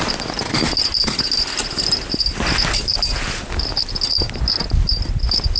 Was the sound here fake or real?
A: real